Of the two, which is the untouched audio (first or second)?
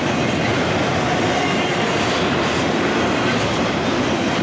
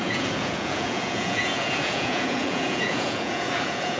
first